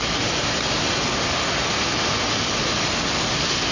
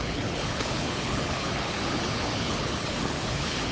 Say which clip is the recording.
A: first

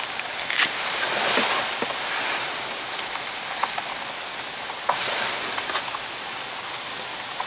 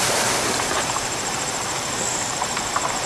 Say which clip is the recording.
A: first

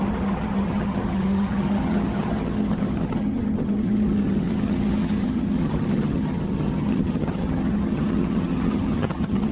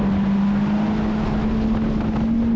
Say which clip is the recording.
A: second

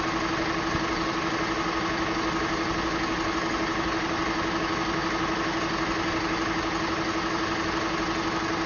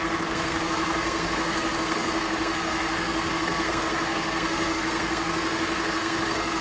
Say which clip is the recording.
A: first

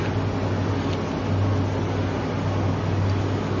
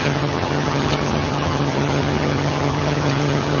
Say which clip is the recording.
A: first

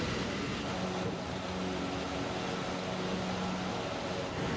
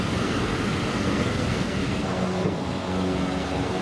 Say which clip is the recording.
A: first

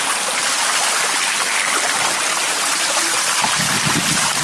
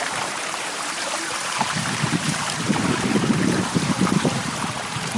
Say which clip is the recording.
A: first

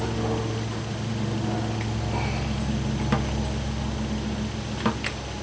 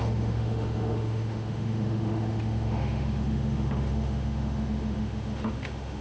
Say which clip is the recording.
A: first